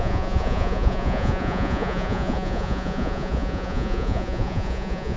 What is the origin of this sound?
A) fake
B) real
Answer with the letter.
A